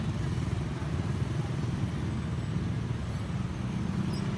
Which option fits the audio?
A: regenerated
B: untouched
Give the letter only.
B